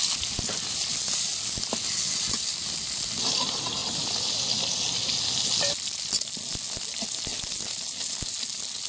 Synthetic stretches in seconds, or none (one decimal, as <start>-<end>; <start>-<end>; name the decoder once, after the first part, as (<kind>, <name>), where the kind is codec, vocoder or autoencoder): none